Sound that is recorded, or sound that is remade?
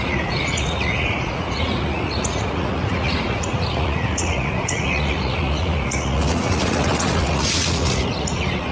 remade